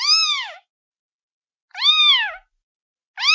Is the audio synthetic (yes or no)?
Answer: no